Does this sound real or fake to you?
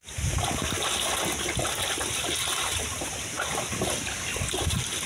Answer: real